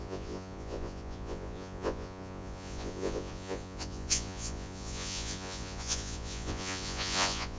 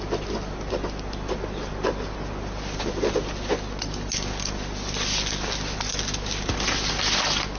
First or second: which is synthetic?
first